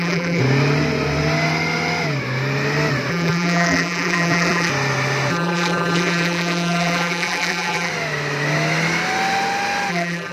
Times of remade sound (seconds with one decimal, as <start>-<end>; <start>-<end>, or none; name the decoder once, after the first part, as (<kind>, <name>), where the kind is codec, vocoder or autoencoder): 0.0-0.4 (vocoder, BigVGAN v2); 3.1-4.7; 5.3-7.9; 9.9-10.3